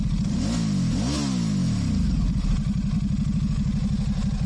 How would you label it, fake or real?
real